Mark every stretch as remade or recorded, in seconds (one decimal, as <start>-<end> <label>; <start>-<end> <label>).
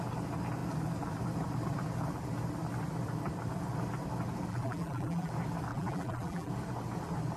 0.0-4.5 recorded; 4.5-5.3 remade; 5.3-5.7 recorded; 5.7-6.5 remade; 6.5-7.4 recorded